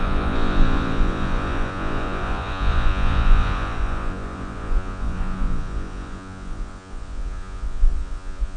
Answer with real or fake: fake